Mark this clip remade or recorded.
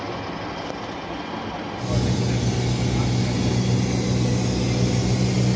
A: recorded